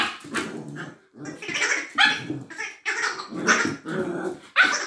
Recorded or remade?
remade